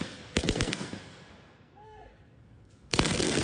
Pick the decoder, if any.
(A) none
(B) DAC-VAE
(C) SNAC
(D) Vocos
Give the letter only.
C